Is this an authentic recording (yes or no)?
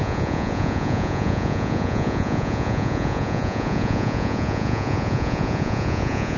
no